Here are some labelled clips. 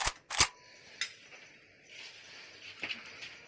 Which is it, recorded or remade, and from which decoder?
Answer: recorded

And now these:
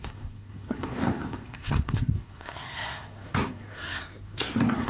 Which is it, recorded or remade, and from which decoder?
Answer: remade, codec, SNAC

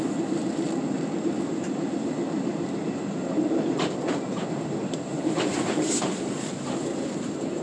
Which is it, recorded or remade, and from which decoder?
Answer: remade, vocoder, BigVGAN v2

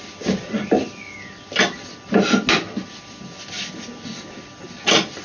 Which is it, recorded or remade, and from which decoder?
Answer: recorded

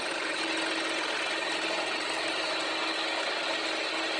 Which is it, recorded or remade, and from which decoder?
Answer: recorded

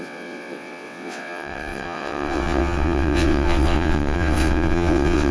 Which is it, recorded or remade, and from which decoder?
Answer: remade, vocoder, WaveNeXt